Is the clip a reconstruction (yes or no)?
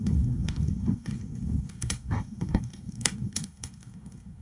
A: yes